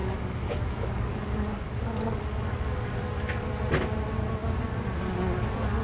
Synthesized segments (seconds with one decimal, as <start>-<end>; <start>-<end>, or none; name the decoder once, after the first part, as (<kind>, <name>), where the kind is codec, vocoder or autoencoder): 0.0-3.5 (codec, DAC)